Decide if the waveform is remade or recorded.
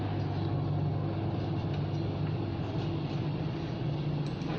recorded